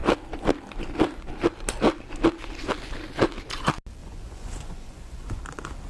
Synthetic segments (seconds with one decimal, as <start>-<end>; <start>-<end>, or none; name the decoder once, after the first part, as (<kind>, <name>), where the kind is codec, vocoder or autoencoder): 4.0-5.4 (vocoder, Vocos)